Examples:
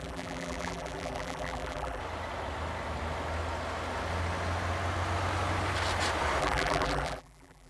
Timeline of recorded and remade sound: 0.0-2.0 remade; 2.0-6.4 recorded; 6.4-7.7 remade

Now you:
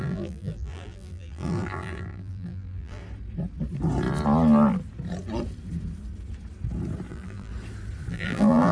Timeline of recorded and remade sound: 0.0-3.0 remade; 3.0-7.1 recorded; 7.1-7.5 remade; 7.5-8.1 recorded; 8.1-8.7 remade

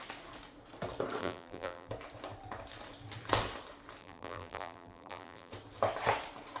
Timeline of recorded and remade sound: 0.0-1.2 recorded; 1.2-1.9 remade; 1.9-4.0 recorded; 4.0-5.5 remade; 5.5-6.6 recorded

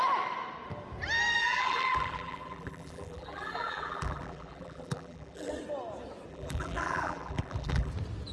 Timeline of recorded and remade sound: 0.0-1.4 recorded; 1.4-5.5 remade; 5.5-6.3 recorded; 6.3-7.9 remade; 7.9-8.3 recorded

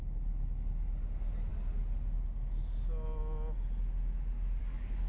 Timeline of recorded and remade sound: 0.0-5.1 recorded

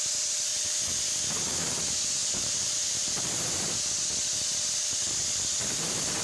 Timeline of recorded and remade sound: 0.0-2.2 recorded; 2.2-3.9 remade; 3.9-6.2 recorded

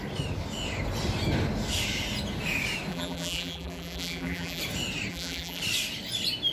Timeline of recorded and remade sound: 0.0-2.9 recorded; 2.9-4.6 remade; 4.6-5.1 recorded; 5.1-5.6 remade; 5.6-6.5 recorded

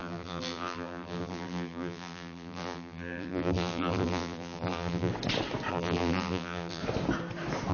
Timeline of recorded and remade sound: 0.0-5.1 remade; 5.1-5.7 recorded; 5.7-6.8 remade; 6.8-7.7 recorded